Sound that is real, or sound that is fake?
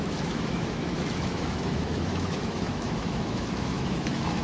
fake